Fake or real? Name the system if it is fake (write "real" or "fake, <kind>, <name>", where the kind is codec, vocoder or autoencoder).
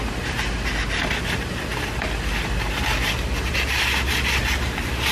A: real